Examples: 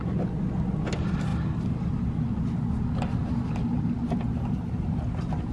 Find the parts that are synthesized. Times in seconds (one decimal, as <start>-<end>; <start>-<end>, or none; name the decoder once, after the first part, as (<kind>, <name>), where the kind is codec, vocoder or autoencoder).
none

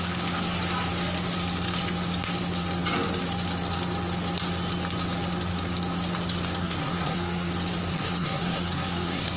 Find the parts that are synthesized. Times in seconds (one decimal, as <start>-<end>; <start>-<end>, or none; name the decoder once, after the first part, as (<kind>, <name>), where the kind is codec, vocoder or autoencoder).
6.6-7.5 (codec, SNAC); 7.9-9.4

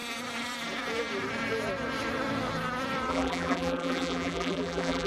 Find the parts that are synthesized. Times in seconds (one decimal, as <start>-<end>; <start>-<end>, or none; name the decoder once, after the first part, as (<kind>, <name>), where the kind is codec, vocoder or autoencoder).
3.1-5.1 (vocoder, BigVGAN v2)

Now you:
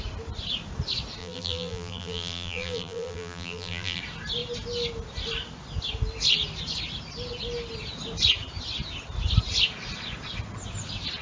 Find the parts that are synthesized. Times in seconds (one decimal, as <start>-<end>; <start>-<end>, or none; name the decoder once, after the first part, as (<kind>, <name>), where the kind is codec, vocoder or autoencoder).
1.2-4.0 (vocoder, BigVGAN v2)